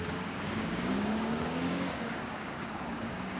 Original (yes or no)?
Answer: no